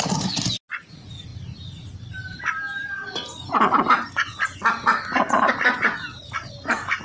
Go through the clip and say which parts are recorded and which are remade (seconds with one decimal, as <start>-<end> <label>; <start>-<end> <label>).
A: 0.0-7.0 recorded